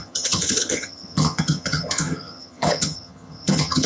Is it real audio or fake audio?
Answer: fake